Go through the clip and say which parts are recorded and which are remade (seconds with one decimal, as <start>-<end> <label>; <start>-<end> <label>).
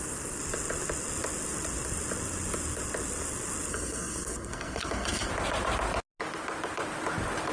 0.0-3.7 recorded; 3.7-5.3 remade; 5.3-7.5 recorded